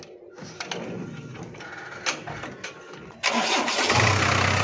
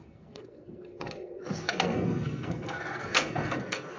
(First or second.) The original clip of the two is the first